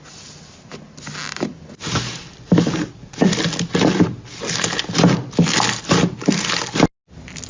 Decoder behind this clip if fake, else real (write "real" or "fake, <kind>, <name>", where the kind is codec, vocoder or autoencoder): real